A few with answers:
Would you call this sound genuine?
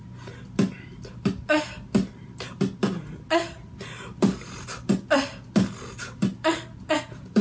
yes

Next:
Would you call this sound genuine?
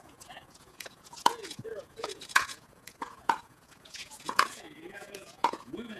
no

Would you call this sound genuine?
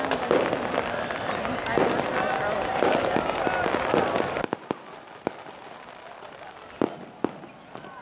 yes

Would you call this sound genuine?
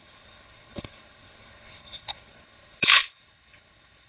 no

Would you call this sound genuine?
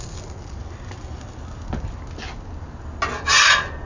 yes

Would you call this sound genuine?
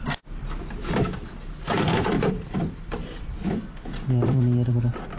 no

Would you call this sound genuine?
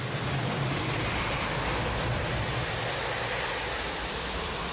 yes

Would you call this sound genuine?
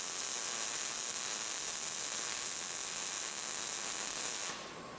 yes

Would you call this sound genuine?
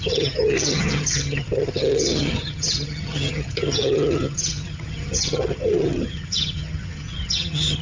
no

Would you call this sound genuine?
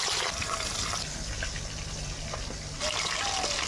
yes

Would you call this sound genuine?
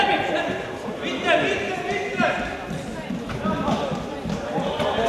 yes